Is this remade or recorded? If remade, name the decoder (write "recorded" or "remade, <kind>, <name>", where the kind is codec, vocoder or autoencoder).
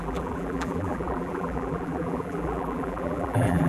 remade, vocoder, BigVGAN v2